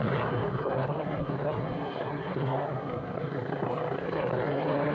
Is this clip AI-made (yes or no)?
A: yes